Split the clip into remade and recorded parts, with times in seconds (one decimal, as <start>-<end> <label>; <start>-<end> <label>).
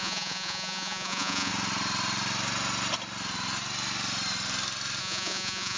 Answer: 0.0-1.5 remade; 1.5-5.0 recorded; 5.0-5.8 remade